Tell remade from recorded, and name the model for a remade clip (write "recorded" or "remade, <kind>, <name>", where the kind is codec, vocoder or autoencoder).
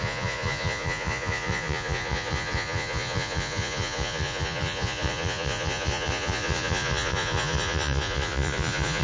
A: remade, vocoder, Vocos